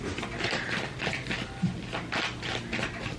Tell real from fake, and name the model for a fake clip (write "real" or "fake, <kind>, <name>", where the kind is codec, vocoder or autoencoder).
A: real